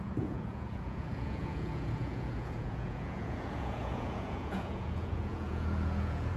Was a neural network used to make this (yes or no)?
yes